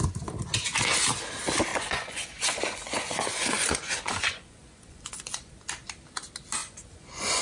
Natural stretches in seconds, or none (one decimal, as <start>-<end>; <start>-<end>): 0.0-1.7; 5.5-6.6